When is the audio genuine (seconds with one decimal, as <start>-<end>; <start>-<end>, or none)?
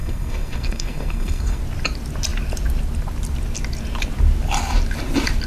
1.6-5.5